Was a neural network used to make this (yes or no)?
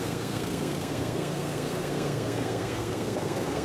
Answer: yes